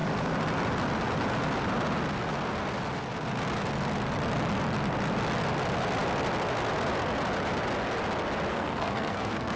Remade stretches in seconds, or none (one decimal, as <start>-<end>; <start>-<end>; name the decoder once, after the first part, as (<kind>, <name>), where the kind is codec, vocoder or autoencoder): 8.5-9.6 (codec, SNAC)

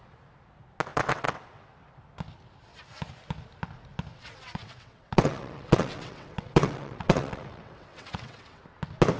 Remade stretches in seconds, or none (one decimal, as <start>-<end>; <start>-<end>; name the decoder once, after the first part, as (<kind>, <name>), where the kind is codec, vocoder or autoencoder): 0.9-1.7 (vocoder, WaveNeXt); 4.1-8.6

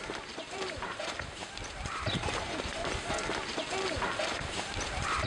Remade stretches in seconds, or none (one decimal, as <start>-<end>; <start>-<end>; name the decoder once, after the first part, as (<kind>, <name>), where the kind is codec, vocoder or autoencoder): 0.0-2.8 (vocoder, BigVGAN v2); 4.4-5.3

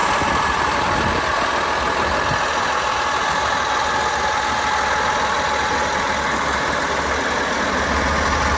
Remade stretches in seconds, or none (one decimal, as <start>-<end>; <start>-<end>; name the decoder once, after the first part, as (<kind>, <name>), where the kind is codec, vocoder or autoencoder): 0.0-1.2 (vocoder, BigVGAN v2)

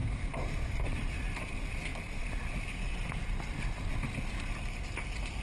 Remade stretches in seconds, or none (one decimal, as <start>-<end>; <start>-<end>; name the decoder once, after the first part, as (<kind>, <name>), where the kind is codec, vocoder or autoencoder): 0.0-1.5 (vocoder, BigVGAN v2)

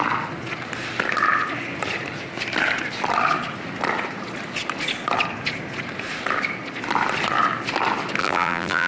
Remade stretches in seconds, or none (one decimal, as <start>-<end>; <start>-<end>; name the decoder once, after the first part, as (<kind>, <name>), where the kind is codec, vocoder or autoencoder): 8.2-8.9 (vocoder, BigVGAN v2)